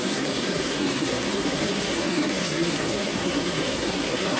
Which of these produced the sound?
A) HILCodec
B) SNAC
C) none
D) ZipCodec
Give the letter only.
B